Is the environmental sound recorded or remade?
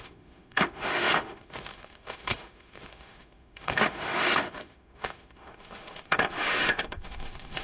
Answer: remade